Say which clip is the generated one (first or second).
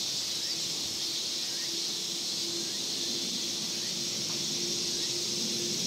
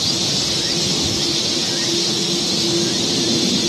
second